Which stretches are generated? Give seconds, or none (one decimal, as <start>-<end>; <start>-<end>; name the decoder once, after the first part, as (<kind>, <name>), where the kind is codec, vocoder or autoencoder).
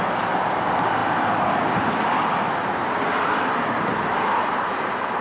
none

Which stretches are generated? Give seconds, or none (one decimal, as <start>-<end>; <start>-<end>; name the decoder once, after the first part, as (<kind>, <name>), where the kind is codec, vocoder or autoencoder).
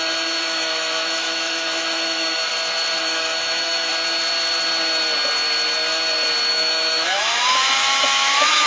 0.0-2.5 (autoencoder, DAC-VAE); 3.0-3.9; 6.5-8.7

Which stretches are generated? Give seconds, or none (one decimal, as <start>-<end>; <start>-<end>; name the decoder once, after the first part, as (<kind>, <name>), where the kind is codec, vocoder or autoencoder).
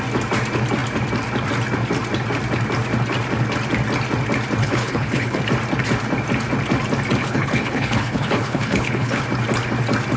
4.6-5.4 (codec, HILCodec); 7.2-9.2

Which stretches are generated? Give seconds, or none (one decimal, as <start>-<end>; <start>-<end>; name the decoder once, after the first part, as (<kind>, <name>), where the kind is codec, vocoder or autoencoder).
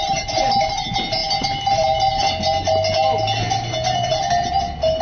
none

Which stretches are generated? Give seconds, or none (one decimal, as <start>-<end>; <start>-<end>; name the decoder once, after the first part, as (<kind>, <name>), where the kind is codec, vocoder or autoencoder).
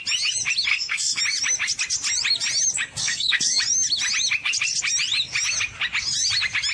0.7-1.2 (codec, SNAC); 3.0-3.6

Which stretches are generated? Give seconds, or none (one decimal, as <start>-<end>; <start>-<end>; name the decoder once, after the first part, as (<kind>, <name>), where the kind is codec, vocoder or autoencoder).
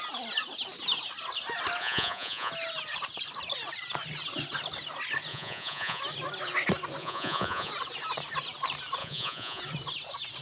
1.8-2.5 (vocoder, Vocos); 5.3-6.0; 7.0-7.7; 9.0-9.6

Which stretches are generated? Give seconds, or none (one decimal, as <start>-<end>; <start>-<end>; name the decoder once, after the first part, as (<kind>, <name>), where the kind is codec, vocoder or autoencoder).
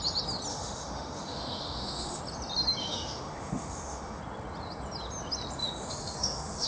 0.5-2.2 (autoencoder, DAC-VAE); 2.8-4.2; 5.6-6.7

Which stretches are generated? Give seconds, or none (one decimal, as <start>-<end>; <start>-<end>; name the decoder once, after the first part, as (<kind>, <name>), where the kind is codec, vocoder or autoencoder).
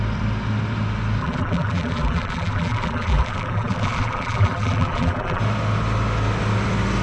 1.2-5.4 (vocoder, BigVGAN v2)